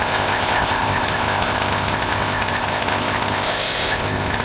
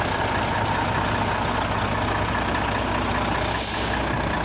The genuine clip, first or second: second